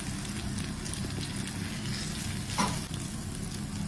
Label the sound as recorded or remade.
recorded